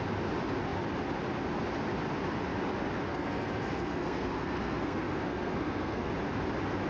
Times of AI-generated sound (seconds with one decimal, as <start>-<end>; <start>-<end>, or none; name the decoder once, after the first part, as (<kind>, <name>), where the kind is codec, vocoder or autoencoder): 3.1-6.1 (codec, SNAC)